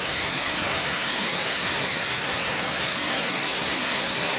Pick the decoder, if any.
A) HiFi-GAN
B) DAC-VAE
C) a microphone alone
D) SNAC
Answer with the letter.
D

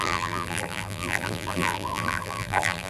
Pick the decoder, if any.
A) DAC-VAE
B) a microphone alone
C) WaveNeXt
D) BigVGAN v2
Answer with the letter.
D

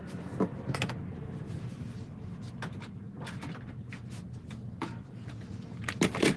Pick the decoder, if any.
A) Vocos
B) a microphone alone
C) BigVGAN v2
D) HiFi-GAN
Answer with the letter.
B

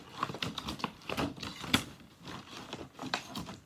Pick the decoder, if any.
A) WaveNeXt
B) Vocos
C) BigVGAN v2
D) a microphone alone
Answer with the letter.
D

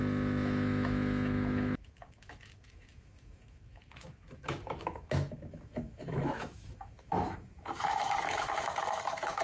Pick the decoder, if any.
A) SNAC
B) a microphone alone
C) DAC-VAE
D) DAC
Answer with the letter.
C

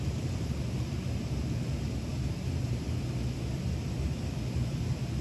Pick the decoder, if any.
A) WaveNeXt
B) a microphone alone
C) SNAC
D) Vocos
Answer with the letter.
B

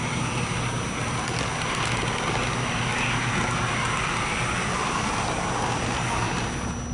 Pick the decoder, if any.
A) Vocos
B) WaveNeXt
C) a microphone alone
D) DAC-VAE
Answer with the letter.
C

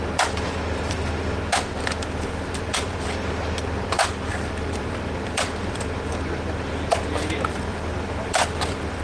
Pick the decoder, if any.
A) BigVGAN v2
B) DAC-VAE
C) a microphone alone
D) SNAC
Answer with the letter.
A